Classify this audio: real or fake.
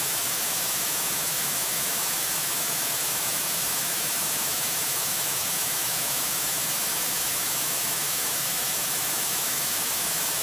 fake